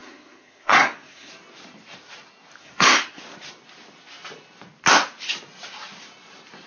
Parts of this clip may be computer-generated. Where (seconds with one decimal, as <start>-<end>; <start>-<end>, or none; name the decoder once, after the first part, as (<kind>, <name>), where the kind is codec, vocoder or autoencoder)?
0.0-1.3 (codec, SNAC); 2.6-3.2